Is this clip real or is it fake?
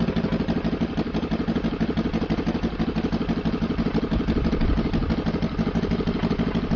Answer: real